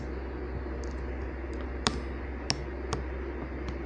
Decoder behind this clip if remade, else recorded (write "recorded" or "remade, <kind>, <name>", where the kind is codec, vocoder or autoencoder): recorded